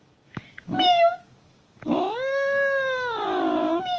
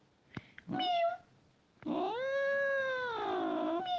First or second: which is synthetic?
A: first